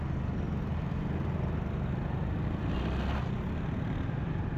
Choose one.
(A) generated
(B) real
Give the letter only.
B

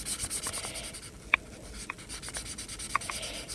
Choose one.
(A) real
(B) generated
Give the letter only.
A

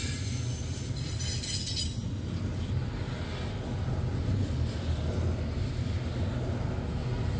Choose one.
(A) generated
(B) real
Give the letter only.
B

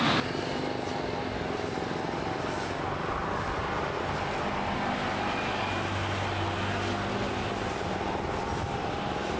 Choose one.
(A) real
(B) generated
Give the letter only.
A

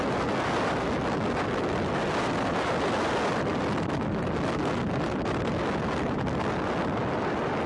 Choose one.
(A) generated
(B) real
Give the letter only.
B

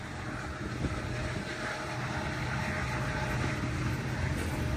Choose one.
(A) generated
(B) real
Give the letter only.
B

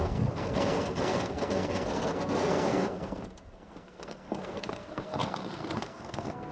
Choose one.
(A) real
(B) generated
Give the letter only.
B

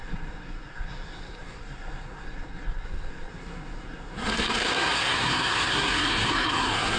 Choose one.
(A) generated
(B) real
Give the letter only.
A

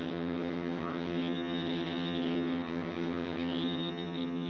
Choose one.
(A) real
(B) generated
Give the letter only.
B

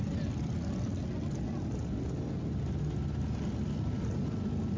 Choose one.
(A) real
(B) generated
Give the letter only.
A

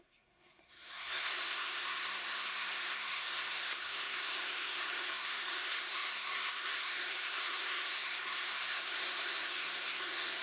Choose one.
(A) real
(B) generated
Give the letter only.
B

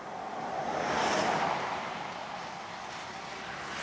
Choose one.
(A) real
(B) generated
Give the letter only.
A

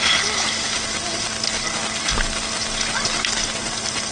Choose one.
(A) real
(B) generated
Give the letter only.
A